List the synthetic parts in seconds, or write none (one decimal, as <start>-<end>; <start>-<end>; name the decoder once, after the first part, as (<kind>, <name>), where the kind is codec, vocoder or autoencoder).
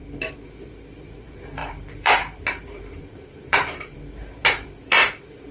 0.6-5.5 (vocoder, BigVGAN v2)